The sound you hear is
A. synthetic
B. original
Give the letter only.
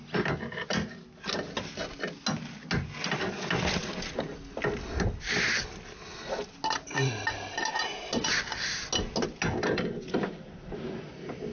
B